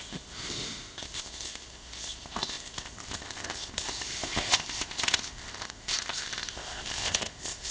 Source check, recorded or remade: remade